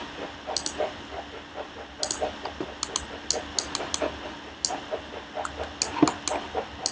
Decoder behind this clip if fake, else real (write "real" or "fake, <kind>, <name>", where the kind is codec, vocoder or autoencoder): real